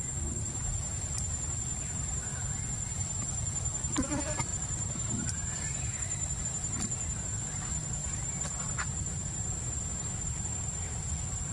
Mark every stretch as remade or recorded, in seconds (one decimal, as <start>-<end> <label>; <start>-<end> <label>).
0.0-4.5 recorded; 4.5-6.4 remade; 6.4-8.0 recorded; 8.0-11.0 remade; 11.0-11.5 recorded